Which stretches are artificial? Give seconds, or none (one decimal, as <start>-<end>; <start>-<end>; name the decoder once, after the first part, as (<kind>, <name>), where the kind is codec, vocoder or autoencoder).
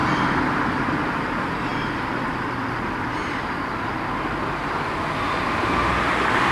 none